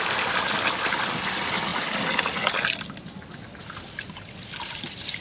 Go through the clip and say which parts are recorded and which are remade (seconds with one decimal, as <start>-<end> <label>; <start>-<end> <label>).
0.0-5.2 recorded